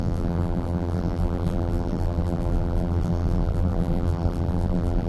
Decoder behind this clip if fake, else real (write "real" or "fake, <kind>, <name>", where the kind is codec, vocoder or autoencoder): fake, vocoder, BigVGAN v2